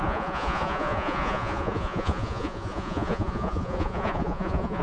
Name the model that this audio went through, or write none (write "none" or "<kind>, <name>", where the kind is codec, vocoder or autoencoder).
vocoder, Vocos